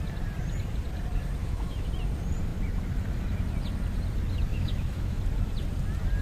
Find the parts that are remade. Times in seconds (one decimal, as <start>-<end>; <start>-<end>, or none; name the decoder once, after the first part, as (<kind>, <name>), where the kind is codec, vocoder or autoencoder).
1.4-1.9 (autoencoder, DAC-VAE); 4.5-5.2